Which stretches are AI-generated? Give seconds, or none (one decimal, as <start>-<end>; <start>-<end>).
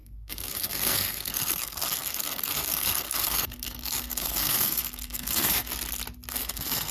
0.0-5.7; 6.3-6.9